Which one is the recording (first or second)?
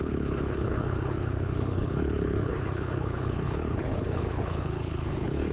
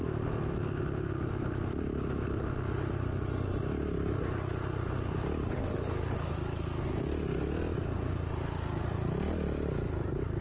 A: second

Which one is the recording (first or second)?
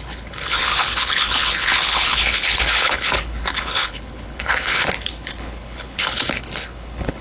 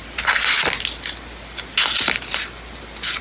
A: second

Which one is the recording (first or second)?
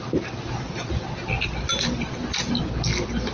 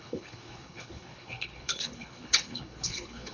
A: first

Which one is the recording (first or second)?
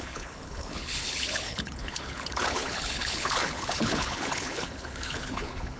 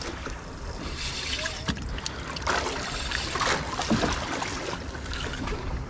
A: second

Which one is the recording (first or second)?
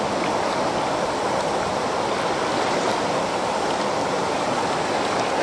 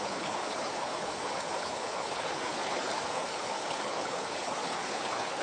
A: first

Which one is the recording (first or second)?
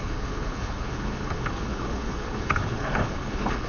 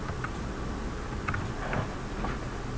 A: second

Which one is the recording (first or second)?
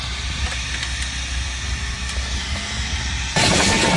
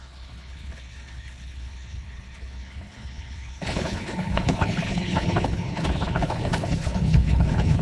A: first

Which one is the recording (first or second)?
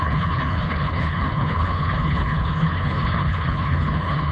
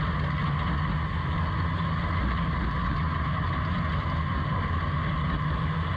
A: second